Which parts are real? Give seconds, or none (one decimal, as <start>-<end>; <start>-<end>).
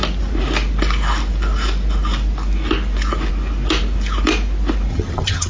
0.0-4.9